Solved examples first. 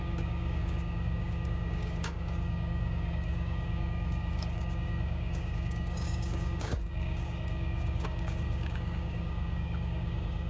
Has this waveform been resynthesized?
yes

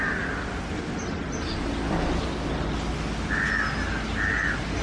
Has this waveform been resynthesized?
no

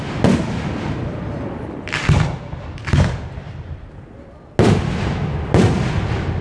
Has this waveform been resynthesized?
no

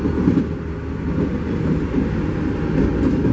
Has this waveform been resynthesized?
no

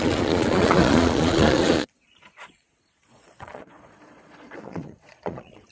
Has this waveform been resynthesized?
yes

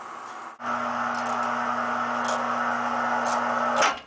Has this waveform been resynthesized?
no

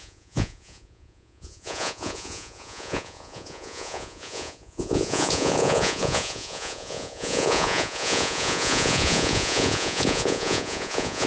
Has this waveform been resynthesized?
yes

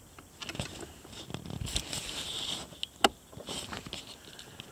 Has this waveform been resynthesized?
no